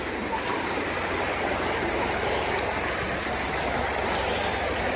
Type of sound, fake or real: real